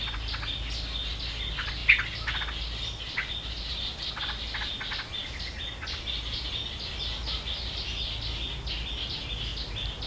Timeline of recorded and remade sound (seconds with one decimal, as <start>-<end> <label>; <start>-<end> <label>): 0.0-10.1 recorded